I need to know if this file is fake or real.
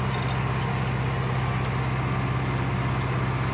real